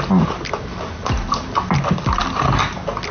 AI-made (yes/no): no